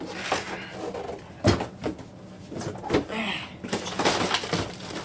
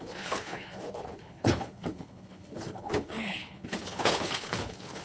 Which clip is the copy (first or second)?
second